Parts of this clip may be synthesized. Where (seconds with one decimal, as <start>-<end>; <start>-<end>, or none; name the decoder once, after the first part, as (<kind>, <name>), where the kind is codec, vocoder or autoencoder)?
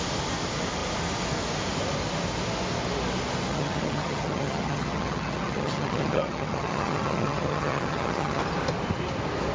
3.5-8.4 (vocoder, HiFi-GAN)